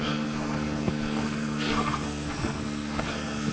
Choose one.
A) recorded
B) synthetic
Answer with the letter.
B